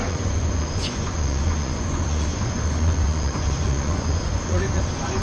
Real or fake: fake